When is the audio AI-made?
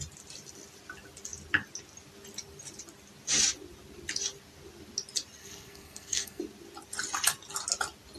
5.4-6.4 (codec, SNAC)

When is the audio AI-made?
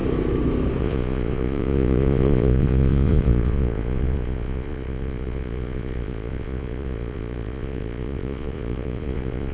0.8-9.5 (vocoder, Vocos)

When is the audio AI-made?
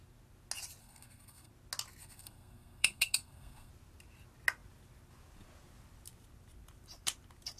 0.8-1.5 (codec, SNAC); 2.0-3.7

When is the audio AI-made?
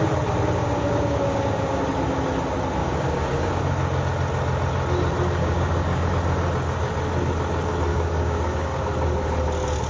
0.6-1.8 (codec, DAC); 2.8-3.6; 5.4-6.1; 7.9-8.8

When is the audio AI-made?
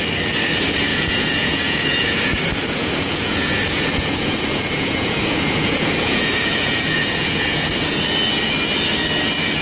0.9-2.4 (vocoder, Vocos); 2.8-8.0